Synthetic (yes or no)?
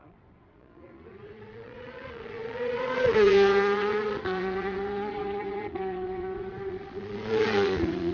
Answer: yes